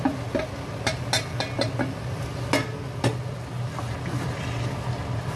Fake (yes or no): no